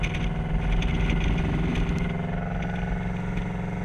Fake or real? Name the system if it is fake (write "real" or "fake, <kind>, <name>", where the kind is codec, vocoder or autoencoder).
real